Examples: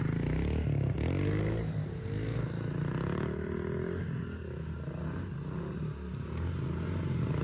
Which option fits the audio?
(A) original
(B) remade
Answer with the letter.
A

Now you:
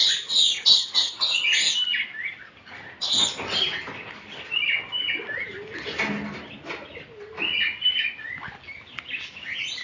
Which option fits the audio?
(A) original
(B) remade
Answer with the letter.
A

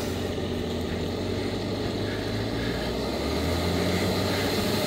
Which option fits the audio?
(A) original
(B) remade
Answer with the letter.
A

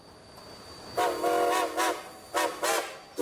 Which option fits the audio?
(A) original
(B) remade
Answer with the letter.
A